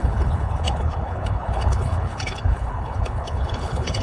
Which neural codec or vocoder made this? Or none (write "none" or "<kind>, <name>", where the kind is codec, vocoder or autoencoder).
codec, HILCodec